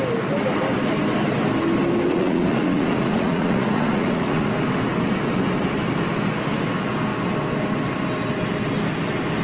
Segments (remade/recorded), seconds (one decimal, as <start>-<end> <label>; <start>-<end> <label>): 0.0-2.1 recorded; 2.1-4.5 remade; 4.5-9.4 recorded